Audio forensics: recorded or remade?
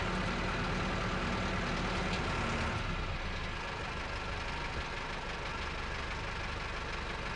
recorded